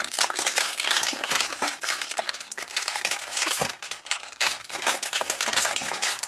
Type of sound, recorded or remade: remade